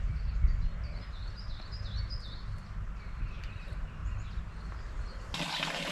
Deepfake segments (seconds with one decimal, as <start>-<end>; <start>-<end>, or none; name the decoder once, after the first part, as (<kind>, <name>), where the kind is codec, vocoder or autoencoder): 0.0-1.2 (vocoder, BigVGAN v2); 3.0-4.0; 5.5-5.9